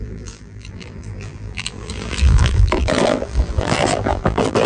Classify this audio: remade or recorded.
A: remade